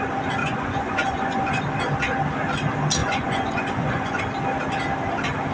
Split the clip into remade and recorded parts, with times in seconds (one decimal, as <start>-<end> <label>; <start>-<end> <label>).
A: 0.0-0.4 recorded; 0.4-1.6 remade; 1.6-3.0 recorded; 3.0-4.2 remade; 4.2-5.5 recorded